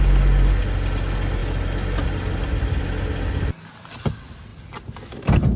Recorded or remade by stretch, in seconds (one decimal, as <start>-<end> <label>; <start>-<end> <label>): 0.0-5.6 recorded